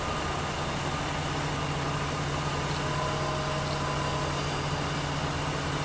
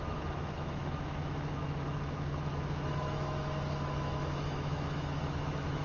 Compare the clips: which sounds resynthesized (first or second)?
second